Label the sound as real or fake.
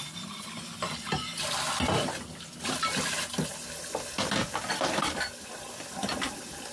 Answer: real